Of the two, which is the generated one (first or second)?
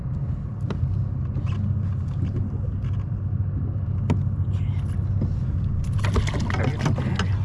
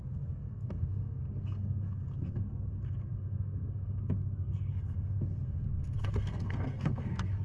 second